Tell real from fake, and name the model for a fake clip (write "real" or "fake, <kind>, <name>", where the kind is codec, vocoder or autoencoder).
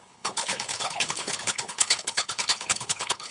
fake, codec, HILCodec